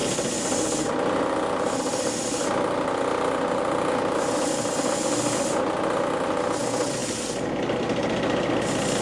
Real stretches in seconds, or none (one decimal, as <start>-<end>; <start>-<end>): 0.0-9.0